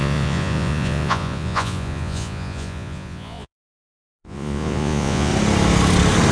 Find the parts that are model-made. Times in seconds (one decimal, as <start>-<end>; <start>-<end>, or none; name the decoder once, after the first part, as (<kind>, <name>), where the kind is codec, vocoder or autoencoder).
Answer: 0.0-5.3 (vocoder, Vocos)